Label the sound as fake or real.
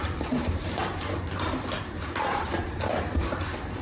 fake